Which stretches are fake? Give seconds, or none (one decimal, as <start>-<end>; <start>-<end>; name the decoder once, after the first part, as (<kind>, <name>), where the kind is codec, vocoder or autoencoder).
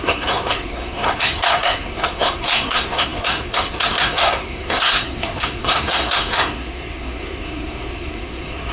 0.0-8.7 (codec, SNAC)